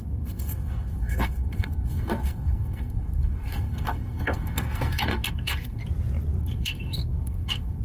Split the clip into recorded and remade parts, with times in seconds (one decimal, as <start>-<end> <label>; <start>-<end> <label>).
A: 0.0-5.8 remade; 5.8-6.4 recorded; 6.4-7.8 remade

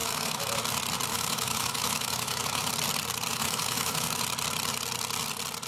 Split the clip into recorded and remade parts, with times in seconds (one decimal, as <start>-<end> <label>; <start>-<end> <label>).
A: 0.0-0.6 remade; 0.6-1.1 recorded; 1.1-2.7 remade; 2.7-3.3 recorded; 3.3-4.2 remade; 4.2-5.7 recorded

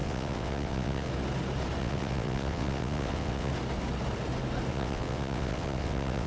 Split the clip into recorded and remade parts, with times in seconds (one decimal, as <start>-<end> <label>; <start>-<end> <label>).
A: 0.0-1.1 remade; 1.1-1.8 recorded; 1.8-3.5 remade; 3.5-4.7 recorded; 4.7-6.3 remade

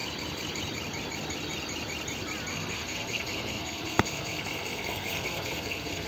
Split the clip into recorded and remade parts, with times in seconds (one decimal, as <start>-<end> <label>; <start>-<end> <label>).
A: 0.0-2.5 recorded; 2.5-6.1 remade

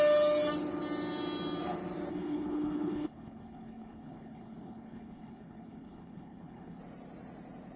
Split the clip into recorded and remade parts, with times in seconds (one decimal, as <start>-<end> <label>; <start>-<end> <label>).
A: 0.0-2.1 recorded; 2.1-6.8 remade; 6.8-7.8 recorded

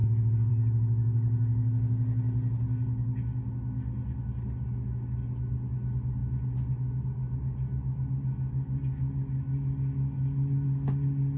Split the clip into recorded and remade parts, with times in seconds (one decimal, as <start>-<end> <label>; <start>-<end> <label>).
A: 0.0-11.4 recorded

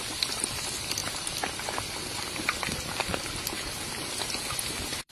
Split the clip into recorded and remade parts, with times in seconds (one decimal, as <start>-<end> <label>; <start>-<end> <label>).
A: 0.0-1.0 recorded; 1.0-1.6 remade; 1.6-5.1 recorded

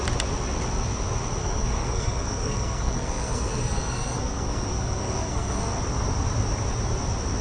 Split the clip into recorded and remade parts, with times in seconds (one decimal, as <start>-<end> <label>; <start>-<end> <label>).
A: 0.0-1.4 recorded; 1.4-5.6 remade; 5.6-7.4 recorded